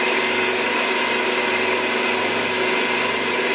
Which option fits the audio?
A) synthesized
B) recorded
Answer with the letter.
B